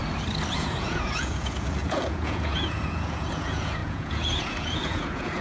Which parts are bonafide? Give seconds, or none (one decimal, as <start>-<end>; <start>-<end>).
0.0-0.5